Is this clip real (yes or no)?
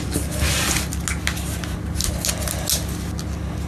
yes